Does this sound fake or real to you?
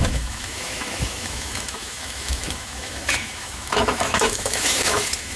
fake